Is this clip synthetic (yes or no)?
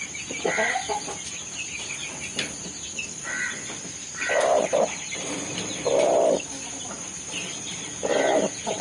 no